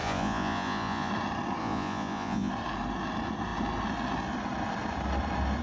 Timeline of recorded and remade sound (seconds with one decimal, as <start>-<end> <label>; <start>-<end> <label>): 0.0-1.1 remade; 1.1-1.6 recorded; 1.6-2.5 remade; 2.5-5.6 recorded